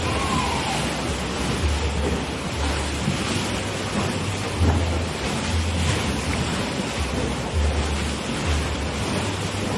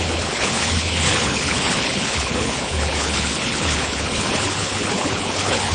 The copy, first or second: second